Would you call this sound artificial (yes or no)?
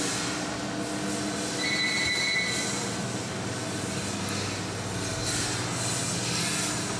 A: no